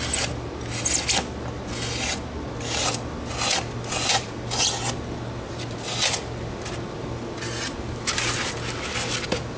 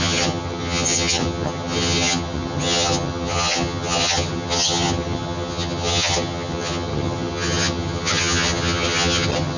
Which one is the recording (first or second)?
first